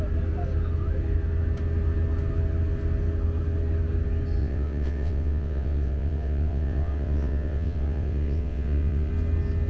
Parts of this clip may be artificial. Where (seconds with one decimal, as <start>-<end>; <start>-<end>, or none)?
4.4-9.1